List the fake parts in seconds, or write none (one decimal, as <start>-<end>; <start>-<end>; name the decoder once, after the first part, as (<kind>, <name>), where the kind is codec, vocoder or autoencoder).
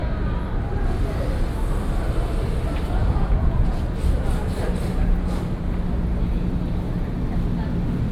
3.0-3.8 (vocoder, Vocos)